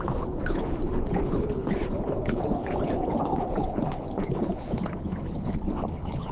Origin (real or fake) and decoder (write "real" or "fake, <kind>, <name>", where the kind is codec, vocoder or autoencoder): fake, codec, HILCodec